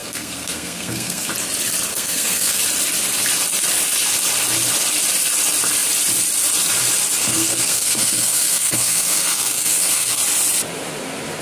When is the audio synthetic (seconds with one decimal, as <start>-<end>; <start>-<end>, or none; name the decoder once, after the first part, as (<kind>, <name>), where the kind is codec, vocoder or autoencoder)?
0.0-1.3 (codec, SNAC); 1.9-2.6; 7.2-10.2